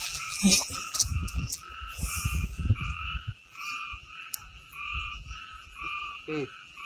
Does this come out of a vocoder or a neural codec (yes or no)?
yes